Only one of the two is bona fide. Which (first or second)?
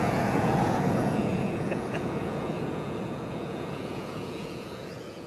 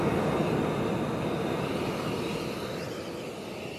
second